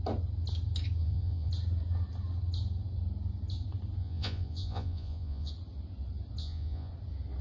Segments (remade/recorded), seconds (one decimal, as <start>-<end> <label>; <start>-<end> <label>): 0.0-1.0 recorded; 1.0-1.5 remade; 1.5-4.0 recorded; 4.0-5.5 remade; 5.5-6.4 recorded; 6.4-6.9 remade; 6.9-7.4 recorded